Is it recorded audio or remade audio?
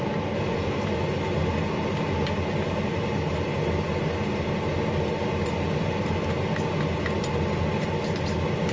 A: recorded